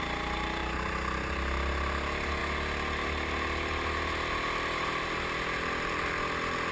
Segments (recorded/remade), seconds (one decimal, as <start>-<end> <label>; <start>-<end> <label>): 0.0-6.7 recorded